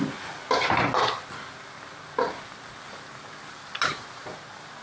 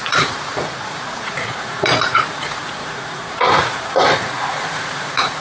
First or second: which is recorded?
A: first